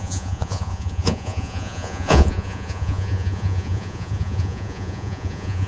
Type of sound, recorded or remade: remade